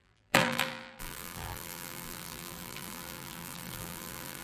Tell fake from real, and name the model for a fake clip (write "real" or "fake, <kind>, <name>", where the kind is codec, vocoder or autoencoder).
fake, vocoder, BigVGAN v2